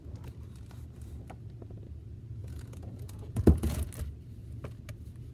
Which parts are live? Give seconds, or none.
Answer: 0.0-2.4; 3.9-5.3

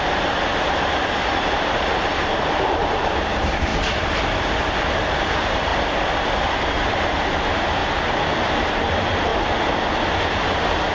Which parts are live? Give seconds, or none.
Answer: 3.7-4.2; 5.7-6.6; 7.8-8.7; 9.3-10.2

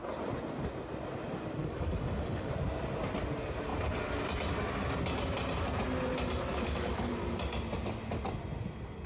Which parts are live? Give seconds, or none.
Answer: 0.0-1.6; 2.5-6.5; 7.1-9.1

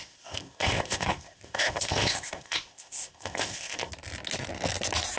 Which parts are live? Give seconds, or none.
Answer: 3.9-5.2

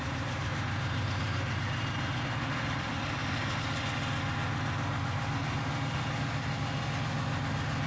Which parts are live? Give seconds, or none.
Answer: 3.2-7.9

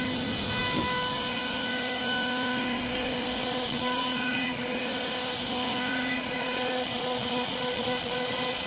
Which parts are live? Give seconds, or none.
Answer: 0.0-3.4; 4.8-5.9